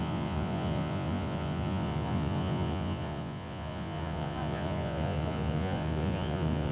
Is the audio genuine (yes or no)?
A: no